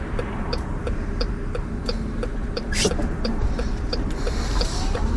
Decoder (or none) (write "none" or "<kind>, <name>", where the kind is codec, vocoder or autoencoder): vocoder, BigVGAN v2